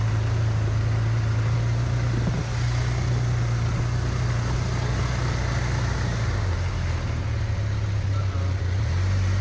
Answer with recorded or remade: recorded